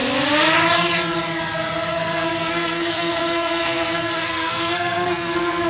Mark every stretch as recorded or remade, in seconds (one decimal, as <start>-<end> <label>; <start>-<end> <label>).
0.0-1.9 recorded; 1.9-5.7 remade